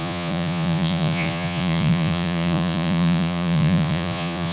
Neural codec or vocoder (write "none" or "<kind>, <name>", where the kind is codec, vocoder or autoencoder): vocoder, Vocos